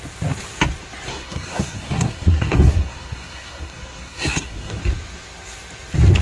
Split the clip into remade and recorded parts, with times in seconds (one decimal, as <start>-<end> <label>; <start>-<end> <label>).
0.0-1.1 recorded; 1.1-4.8 remade; 4.8-6.2 recorded

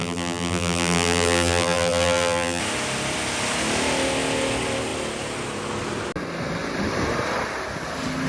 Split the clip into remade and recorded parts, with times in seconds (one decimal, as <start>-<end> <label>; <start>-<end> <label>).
0.0-2.6 remade; 2.6-8.3 recorded

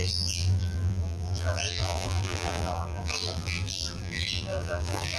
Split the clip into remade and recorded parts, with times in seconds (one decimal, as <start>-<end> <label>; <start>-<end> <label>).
0.0-5.2 remade

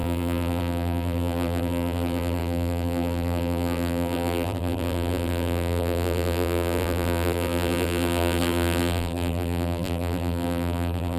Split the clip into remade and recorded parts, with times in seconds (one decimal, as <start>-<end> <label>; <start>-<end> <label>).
0.0-11.2 remade

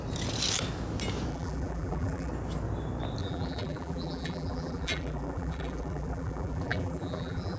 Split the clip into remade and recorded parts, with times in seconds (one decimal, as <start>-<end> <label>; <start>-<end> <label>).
0.0-1.3 recorded; 1.3-2.3 remade; 2.3-3.2 recorded; 3.2-7.6 remade

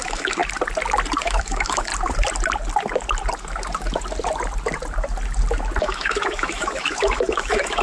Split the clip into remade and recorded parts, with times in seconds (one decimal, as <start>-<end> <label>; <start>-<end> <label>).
0.0-0.4 remade; 0.4-1.2 recorded; 1.2-1.9 remade; 1.9-5.8 recorded; 5.8-7.8 remade

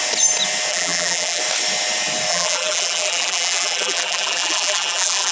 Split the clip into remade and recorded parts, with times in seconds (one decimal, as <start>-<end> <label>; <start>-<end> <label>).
0.0-0.7 recorded; 0.7-1.4 remade; 1.4-2.3 recorded; 2.3-5.3 remade

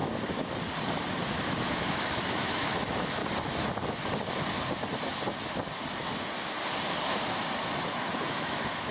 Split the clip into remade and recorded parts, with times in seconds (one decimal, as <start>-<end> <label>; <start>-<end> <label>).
0.0-1.6 recorded; 1.6-3.2 remade; 3.2-7.7 recorded; 7.7-8.9 remade